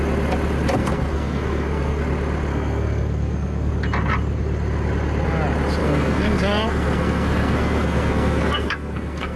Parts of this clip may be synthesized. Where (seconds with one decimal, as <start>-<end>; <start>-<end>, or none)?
0.8-2.0; 2.5-3.7; 5.8-9.4